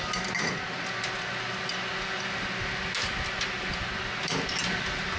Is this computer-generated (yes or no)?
no